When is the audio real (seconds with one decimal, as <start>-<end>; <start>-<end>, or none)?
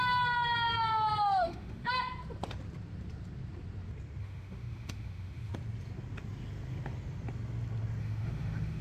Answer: 0.0-1.4; 1.9-4.2; 5.5-8.0